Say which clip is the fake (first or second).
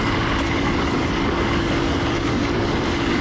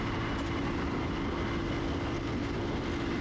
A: first